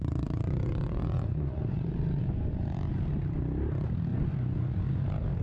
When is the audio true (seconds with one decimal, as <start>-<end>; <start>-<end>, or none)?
2.6-4.1; 4.8-5.4